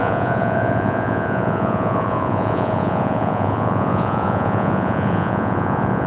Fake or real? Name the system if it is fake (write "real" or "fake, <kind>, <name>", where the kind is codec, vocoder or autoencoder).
fake, vocoder, Vocos